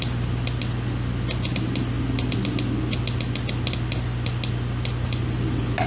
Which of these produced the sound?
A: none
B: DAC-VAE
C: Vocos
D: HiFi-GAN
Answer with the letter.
A